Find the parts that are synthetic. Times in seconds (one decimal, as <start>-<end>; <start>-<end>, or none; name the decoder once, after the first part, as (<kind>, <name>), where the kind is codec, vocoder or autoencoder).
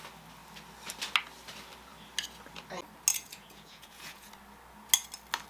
3.1-4.3 (vocoder, Vocos)